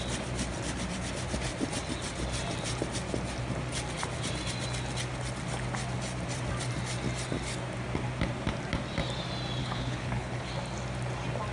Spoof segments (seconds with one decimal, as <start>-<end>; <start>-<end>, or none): 9.6-10.5